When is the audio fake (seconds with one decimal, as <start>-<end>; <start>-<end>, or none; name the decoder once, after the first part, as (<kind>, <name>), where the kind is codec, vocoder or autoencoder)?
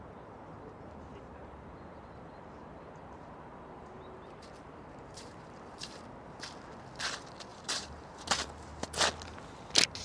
1.1-6.0 (vocoder, BigVGAN v2); 7.5-8.1